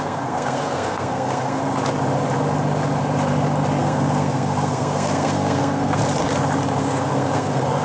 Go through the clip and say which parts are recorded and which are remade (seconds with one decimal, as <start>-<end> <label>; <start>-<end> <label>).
0.0-1.6 remade; 1.6-3.8 recorded; 3.8-6.0 remade; 6.0-6.8 recorded; 6.8-7.8 remade